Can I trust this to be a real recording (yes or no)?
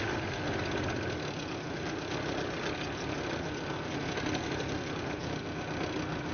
yes